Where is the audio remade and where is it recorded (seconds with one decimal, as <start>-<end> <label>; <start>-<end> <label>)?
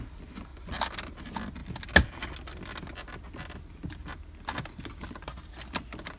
0.0-0.5 recorded; 0.5-1.1 remade; 1.1-6.2 recorded